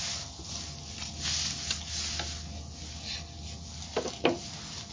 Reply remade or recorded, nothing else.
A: recorded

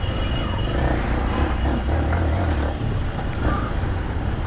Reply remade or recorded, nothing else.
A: remade